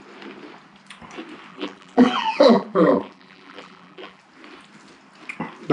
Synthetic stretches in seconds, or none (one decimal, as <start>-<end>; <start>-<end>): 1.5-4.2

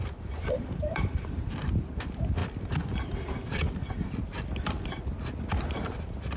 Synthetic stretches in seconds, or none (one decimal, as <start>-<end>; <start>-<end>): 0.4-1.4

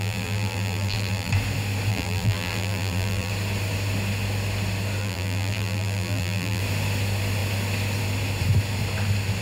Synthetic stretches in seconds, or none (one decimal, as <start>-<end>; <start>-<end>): 0.0-1.3; 1.9-3.3; 5.0-6.6